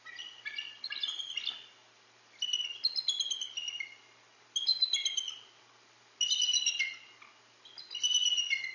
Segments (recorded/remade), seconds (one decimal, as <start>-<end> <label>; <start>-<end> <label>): 0.0-8.7 recorded